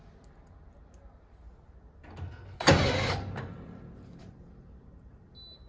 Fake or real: real